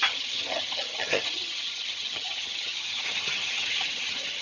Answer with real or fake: fake